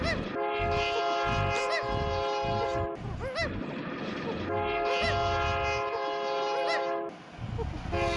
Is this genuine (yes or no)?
yes